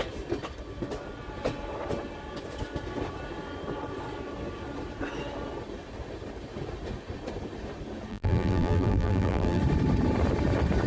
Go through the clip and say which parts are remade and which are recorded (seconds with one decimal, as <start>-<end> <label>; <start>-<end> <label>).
0.0-8.1 recorded; 8.1-9.6 remade; 9.6-10.9 recorded